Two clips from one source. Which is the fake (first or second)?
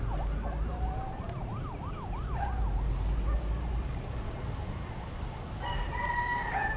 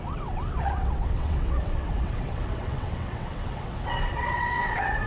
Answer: second